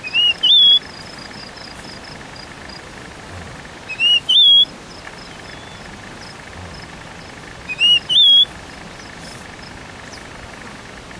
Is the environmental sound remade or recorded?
recorded